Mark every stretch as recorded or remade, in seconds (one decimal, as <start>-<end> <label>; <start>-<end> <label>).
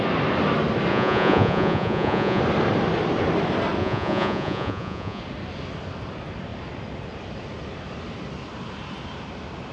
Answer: 0.0-0.9 recorded; 0.9-2.4 remade; 2.4-3.8 recorded; 3.8-5.2 remade; 5.2-9.7 recorded